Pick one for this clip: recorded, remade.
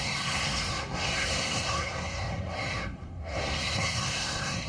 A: remade